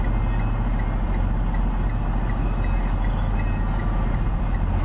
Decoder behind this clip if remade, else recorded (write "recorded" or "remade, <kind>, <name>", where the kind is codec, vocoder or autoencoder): recorded